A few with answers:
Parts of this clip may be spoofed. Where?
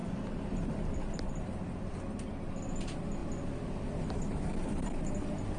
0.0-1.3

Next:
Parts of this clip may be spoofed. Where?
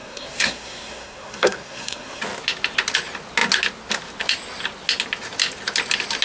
0.0-2.2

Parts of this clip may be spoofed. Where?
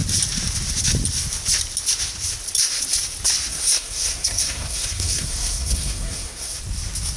3.5-6.6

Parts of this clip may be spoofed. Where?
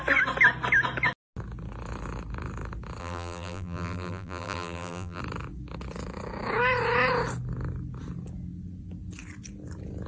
3.0-5.2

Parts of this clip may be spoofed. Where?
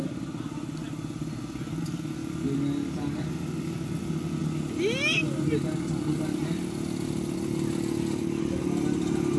none